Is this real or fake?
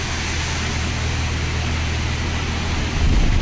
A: real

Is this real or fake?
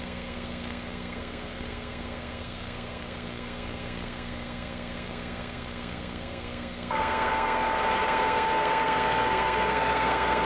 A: fake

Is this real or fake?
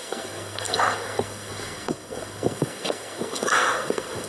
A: fake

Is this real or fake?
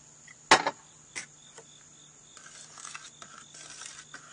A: real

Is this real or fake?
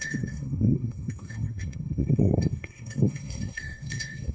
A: fake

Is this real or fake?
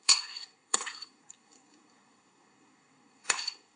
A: fake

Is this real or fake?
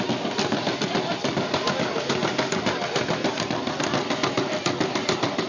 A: real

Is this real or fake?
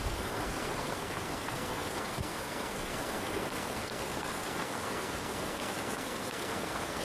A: fake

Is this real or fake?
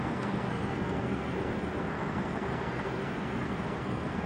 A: fake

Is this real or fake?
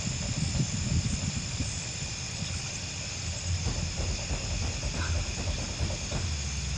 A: real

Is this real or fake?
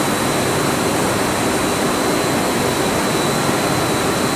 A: real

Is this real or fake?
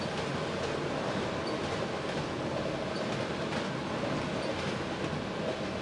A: real